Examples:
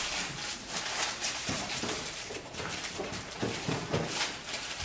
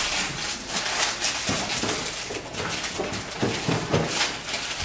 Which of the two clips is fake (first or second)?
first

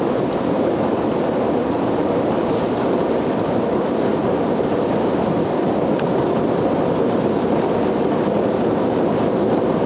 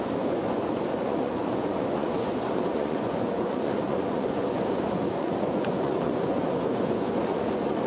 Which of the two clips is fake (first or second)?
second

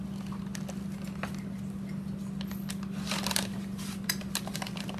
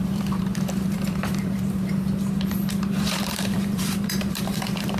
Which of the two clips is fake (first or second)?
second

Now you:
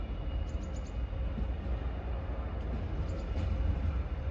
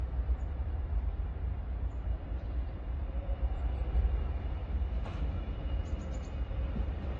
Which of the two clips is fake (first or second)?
second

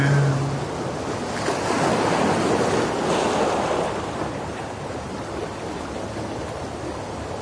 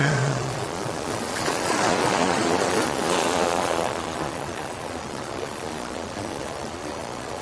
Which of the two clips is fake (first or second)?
second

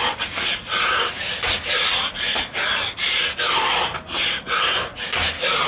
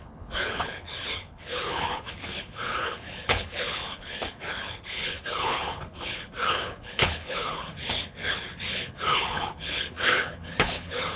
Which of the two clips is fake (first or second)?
second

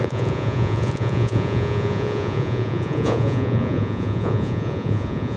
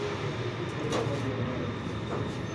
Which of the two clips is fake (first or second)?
first